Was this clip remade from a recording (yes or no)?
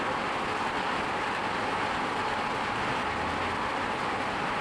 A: no